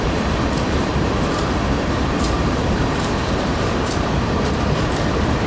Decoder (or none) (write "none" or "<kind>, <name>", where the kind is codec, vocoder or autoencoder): vocoder, BigVGAN v2